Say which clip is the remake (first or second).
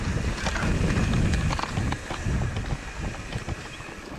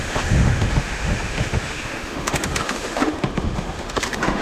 second